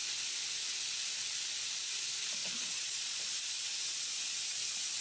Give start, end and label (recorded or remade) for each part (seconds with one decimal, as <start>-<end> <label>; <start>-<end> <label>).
0.0-2.4 recorded; 2.4-3.6 remade; 3.6-5.0 recorded